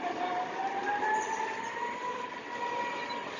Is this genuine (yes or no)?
yes